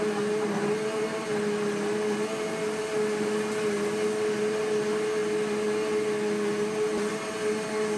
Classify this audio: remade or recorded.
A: recorded